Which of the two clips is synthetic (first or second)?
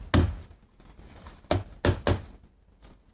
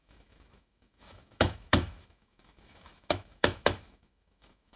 second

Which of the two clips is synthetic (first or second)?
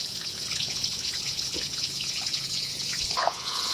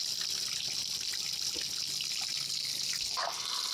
first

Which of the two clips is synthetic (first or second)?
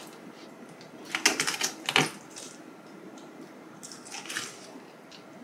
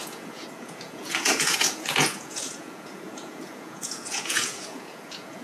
second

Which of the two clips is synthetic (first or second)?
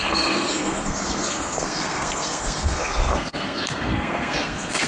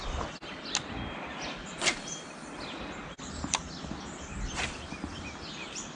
first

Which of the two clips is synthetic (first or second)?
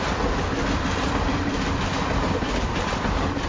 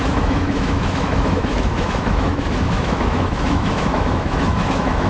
second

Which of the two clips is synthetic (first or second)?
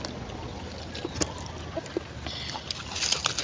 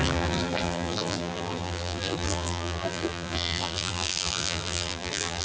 second